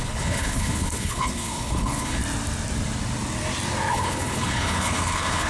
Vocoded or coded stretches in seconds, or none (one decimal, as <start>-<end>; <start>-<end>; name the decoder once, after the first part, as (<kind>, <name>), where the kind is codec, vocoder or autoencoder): 0.0-2.2 (codec, HILCodec); 3.9-5.5